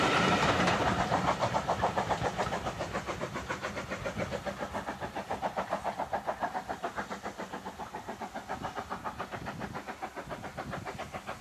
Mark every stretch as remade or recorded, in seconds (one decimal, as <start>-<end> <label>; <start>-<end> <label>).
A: 0.0-11.4 recorded